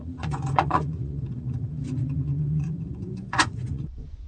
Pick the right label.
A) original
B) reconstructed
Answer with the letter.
B